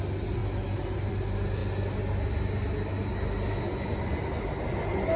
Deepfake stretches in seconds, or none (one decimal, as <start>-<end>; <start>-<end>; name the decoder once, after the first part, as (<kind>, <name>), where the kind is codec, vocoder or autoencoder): none

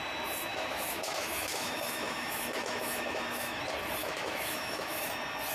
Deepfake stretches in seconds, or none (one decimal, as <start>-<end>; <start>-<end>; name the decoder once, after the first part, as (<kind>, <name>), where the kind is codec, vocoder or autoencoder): 0.5-3.6 (autoencoder, DAC-VAE); 4.0-5.1

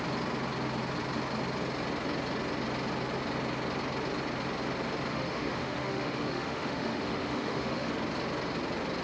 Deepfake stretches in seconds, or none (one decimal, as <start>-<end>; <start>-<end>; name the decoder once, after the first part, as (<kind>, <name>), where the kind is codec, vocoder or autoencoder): 5.1-7.9 (autoencoder, DAC-VAE)

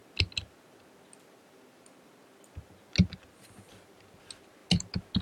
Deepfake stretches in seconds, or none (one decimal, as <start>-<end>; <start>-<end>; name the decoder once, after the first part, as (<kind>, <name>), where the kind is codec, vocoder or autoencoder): none

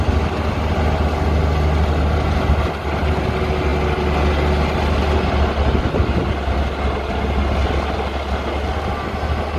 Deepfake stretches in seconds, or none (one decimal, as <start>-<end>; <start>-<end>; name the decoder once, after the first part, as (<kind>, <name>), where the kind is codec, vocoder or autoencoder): none

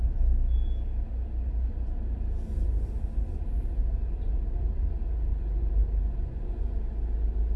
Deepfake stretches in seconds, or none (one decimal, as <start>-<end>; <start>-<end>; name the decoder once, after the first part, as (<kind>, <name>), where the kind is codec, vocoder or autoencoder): 5.3-6.8 (vocoder, Vocos)

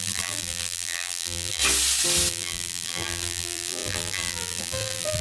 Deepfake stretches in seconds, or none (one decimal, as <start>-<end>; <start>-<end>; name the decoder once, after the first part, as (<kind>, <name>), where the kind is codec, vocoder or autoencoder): 0.0-1.6 (vocoder, BigVGAN v2); 2.3-5.2

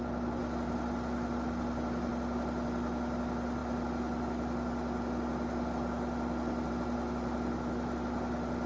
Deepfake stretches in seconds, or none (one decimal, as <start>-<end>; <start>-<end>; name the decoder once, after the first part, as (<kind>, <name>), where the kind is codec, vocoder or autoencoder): none